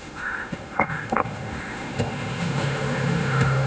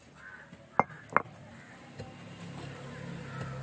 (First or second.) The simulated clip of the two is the first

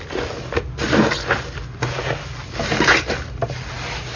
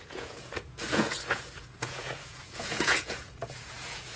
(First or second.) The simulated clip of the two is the second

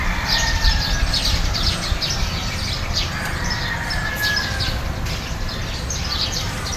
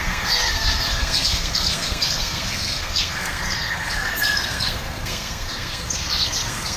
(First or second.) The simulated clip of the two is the second